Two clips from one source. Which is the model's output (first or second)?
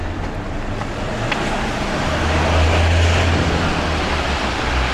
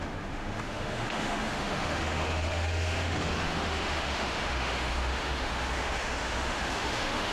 second